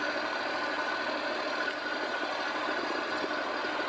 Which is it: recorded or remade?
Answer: recorded